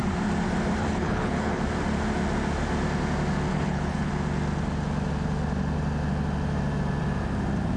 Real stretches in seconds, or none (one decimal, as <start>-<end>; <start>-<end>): 0.0-0.8; 1.6-3.5; 4.1-7.8